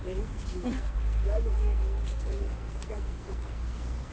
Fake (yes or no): yes